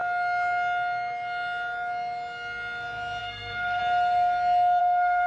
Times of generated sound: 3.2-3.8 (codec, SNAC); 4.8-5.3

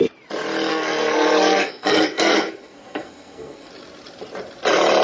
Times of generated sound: 0.7-3.7 (codec, SNAC)

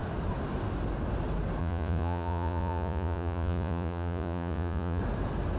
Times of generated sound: 1.6-5.0 (vocoder, Vocos)